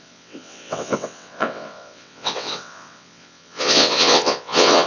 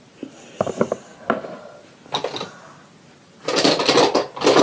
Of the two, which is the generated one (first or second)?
first